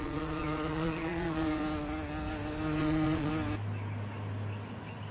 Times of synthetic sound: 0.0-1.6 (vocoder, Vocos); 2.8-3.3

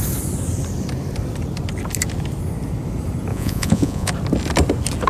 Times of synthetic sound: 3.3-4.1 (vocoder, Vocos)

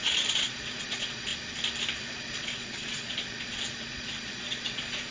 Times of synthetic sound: 0.0-1.3 (vocoder, Vocos); 2.0-5.1